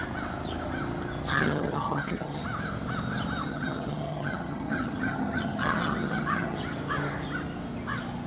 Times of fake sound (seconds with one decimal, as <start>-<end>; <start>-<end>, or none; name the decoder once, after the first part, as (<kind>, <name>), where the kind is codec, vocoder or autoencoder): 1.3-2.4 (vocoder, HiFi-GAN); 3.4-6.6